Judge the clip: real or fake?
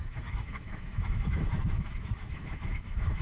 fake